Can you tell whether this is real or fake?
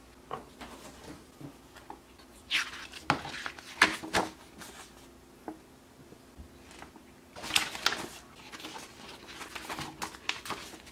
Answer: real